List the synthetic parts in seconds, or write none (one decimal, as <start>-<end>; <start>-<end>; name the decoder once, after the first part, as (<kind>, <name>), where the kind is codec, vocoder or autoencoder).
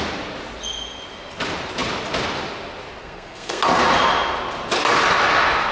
3.0-3.6 (codec, SNAC)